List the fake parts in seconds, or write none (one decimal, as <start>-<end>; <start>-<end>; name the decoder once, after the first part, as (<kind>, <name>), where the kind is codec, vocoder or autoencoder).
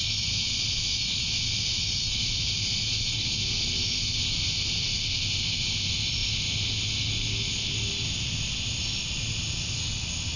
none